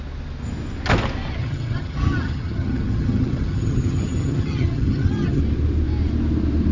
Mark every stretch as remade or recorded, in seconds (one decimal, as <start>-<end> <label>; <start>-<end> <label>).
0.0-1.4 recorded; 1.4-5.4 remade; 5.4-6.7 recorded